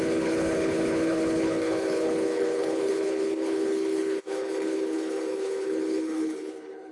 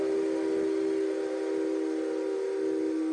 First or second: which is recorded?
second